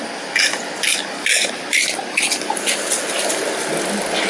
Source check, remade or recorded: recorded